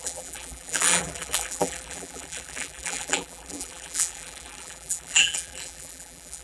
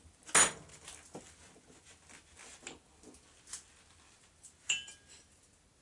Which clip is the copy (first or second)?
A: first